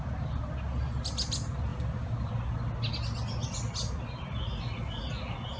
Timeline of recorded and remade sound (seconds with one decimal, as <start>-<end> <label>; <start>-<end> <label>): 0.0-1.7 recorded; 1.7-2.3 remade; 2.3-5.6 recorded